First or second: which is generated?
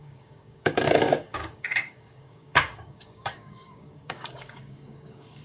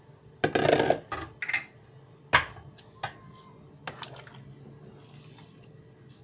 first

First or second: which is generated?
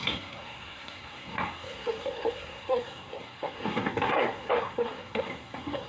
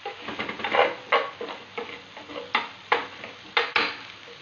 first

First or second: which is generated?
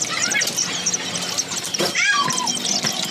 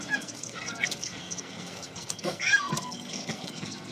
second